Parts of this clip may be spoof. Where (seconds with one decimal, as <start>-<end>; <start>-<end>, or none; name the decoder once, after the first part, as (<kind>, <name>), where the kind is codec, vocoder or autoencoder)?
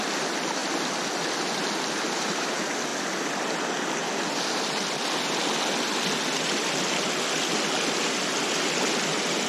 none